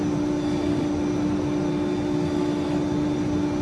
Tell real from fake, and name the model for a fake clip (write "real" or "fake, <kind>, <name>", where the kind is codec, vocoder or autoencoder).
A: real